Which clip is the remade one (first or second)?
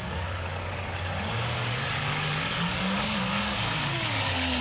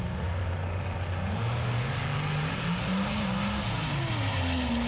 first